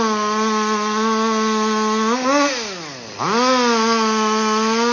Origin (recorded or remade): recorded